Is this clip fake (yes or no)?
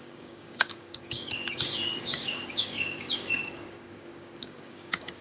yes